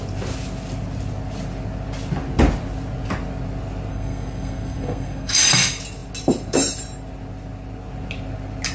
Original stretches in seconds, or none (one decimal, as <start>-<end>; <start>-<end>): 0.0-3.9; 5.5-8.7